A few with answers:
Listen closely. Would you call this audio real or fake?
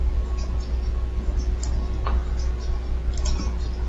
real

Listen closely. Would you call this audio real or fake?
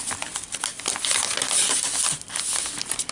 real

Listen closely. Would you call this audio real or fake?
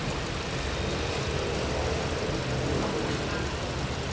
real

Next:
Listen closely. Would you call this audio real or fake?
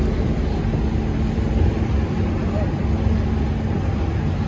real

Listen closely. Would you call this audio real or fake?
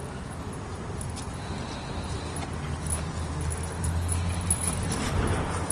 real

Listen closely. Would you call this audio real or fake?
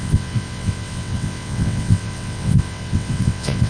fake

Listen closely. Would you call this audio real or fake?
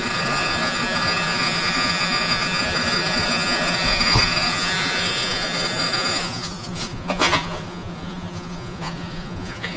fake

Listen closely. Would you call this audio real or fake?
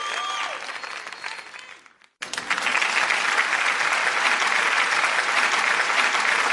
real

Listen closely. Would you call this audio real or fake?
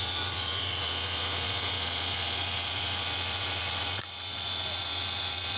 fake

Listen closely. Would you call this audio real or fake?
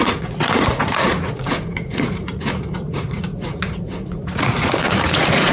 fake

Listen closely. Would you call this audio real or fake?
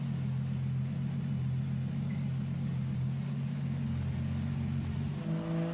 real